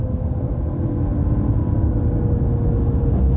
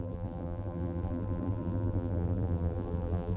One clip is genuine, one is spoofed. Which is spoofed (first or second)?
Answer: second